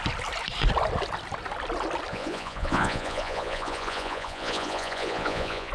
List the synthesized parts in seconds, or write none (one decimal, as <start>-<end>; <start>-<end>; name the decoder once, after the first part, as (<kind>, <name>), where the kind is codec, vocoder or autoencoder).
2.1-5.7 (vocoder, Vocos)